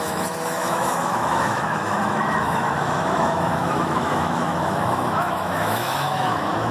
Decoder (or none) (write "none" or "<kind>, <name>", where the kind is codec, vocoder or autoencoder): autoencoder, DAC-VAE